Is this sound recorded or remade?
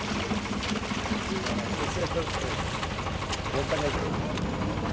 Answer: recorded